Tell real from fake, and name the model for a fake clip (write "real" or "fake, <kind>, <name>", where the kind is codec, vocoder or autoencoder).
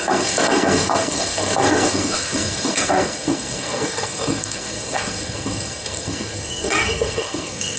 fake, codec, SNAC